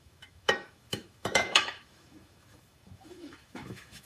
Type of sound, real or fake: fake